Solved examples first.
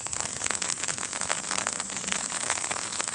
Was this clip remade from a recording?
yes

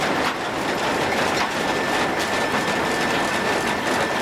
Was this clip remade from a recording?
no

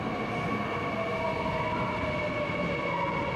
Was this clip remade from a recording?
no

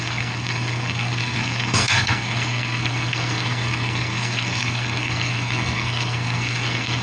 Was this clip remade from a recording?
yes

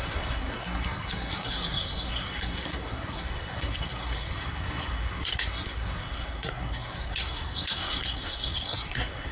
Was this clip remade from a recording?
yes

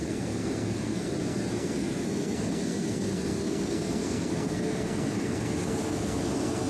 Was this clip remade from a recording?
yes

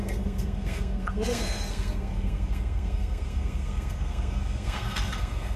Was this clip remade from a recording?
yes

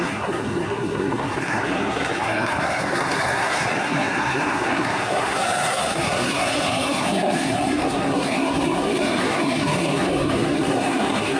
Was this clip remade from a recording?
yes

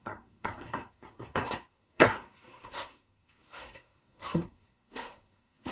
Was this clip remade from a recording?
yes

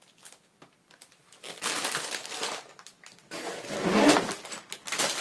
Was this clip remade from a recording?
no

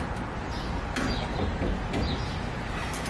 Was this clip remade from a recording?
no